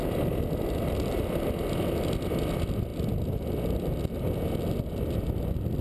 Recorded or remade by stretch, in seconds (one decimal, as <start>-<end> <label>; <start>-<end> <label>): 0.0-5.8 recorded